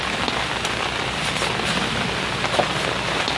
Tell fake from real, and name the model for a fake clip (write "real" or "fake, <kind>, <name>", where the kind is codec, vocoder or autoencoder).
real